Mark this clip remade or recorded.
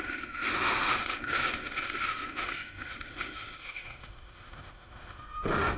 remade